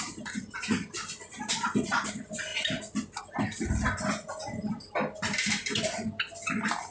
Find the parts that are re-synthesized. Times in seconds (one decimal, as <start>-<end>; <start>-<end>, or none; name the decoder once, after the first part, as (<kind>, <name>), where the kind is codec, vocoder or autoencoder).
none